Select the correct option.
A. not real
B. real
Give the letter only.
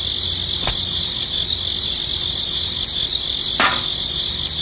B